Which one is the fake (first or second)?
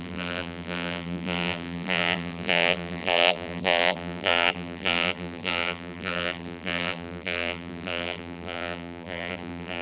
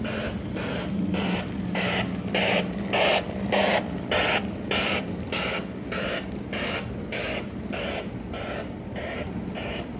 first